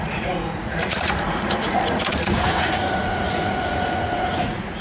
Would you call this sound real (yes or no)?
no